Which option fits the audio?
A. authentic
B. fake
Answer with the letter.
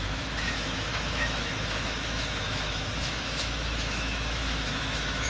B